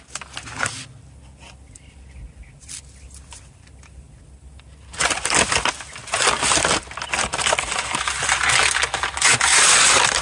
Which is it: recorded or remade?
recorded